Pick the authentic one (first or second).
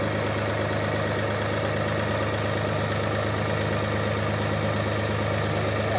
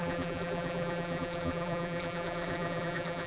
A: first